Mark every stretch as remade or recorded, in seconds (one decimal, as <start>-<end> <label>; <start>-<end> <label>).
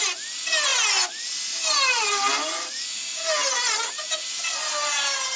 0.0-5.4 recorded